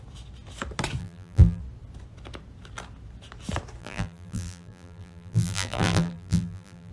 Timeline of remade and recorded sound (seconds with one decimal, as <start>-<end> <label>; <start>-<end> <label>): 0.0-1.0 recorded; 1.0-1.6 remade; 1.6-3.8 recorded; 3.8-6.9 remade